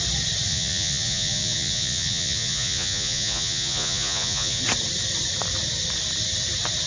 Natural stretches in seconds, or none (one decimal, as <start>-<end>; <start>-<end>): 0.0-0.5; 4.6-6.9

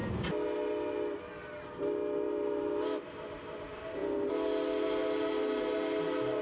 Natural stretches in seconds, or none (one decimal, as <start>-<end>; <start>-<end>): 0.0-6.4